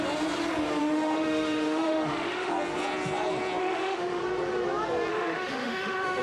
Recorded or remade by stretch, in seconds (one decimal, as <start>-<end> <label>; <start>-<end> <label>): 0.0-0.8 recorded; 0.8-2.5 remade; 2.5-3.6 recorded; 3.6-4.2 remade; 4.2-5.1 recorded; 5.1-6.2 remade